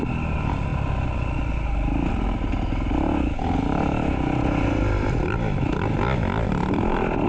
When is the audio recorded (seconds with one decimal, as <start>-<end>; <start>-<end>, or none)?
0.0-7.3